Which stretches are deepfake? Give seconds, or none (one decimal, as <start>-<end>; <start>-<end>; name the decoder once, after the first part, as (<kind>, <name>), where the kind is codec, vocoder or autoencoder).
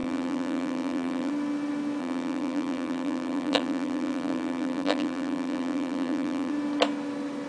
0.0-1.3 (vocoder, BigVGAN v2); 2.0-6.5